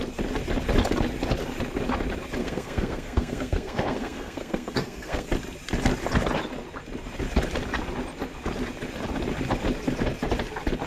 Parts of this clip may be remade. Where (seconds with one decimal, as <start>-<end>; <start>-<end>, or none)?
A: 2.4-5.3